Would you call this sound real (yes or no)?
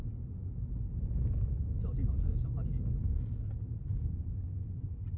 yes